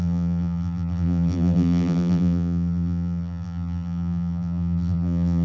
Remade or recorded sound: remade